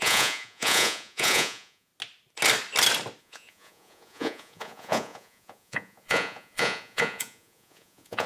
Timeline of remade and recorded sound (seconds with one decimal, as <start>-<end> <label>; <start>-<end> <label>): 0.0-1.9 remade; 1.9-3.2 recorded; 3.2-8.3 remade